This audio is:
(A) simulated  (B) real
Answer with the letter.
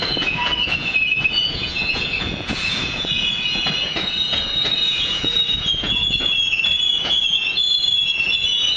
A